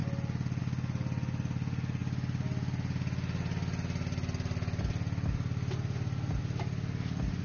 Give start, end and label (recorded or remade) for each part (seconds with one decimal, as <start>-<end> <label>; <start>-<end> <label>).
0.0-7.4 recorded